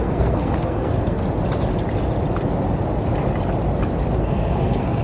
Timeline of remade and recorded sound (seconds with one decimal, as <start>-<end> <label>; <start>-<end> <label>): 0.0-1.2 remade; 1.2-4.2 recorded; 4.2-5.0 remade